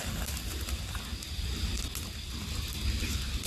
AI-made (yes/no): no